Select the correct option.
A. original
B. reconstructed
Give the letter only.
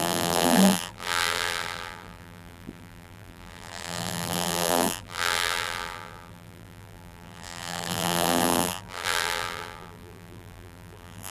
B